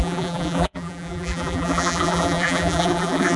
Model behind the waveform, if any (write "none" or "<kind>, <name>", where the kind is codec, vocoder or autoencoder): vocoder, BigVGAN v2